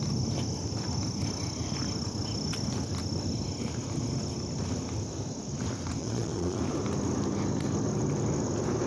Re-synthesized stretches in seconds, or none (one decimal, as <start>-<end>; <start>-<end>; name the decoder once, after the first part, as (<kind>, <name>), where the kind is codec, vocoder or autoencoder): 6.0-6.6 (vocoder, Vocos)

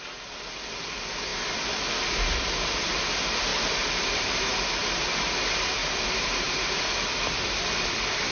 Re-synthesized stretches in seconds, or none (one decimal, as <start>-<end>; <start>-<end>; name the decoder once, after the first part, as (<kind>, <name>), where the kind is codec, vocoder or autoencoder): 3.5-4.4 (vocoder, BigVGAN v2); 5.8-6.8